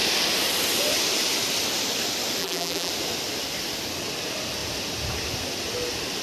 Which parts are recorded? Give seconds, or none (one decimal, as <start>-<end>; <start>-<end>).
0.0-2.4; 2.9-6.2

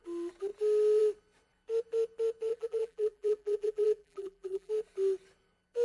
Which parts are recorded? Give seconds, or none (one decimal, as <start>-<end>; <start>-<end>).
0.0-2.5; 4.7-5.8

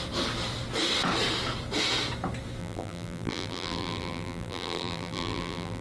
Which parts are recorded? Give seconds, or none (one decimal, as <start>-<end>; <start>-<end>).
0.0-2.6

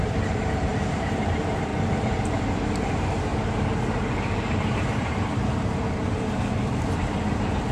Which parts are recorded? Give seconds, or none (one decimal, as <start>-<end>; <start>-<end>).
3.3-3.9